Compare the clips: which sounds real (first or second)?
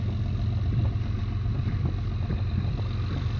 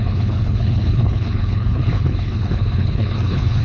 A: first